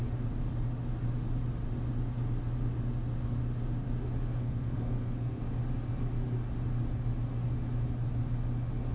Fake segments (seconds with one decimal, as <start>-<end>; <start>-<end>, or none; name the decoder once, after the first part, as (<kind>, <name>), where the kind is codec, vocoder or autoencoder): 4.4-5.4 (codec, SNAC)